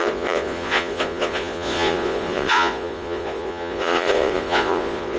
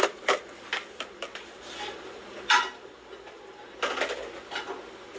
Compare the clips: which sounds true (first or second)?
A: second